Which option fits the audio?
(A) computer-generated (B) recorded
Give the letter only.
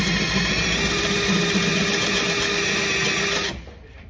B